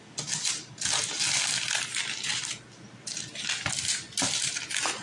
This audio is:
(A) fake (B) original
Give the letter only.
B